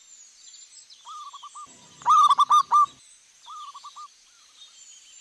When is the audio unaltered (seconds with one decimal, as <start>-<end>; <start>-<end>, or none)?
0.0-5.2